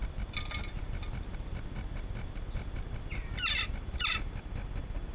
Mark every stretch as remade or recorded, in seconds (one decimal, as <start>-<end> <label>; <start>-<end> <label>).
0.0-5.1 recorded